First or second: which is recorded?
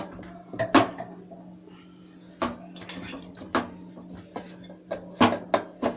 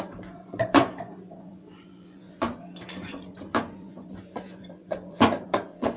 first